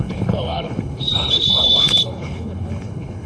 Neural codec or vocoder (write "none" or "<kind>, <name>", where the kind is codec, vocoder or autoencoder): codec, HILCodec